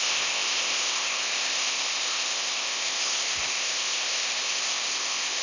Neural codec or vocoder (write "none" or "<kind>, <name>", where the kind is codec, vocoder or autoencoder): codec, ZipCodec